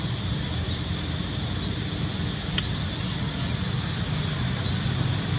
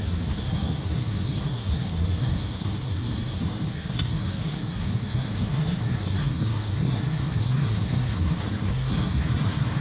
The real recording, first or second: first